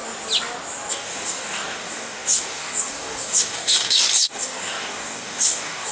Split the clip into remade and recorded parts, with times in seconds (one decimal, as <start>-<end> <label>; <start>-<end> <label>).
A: 0.0-0.9 recorded; 0.9-5.9 remade